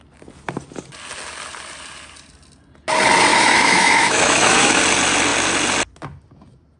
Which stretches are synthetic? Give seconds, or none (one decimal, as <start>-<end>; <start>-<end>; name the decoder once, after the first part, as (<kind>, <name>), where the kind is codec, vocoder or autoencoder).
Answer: 3.3-4.8 (autoencoder, DAC-VAE)